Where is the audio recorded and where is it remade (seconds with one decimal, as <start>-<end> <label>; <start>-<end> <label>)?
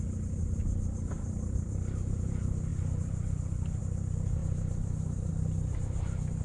0.0-6.4 recorded